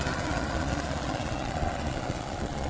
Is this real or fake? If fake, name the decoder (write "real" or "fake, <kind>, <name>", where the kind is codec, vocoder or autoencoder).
fake, vocoder, Vocos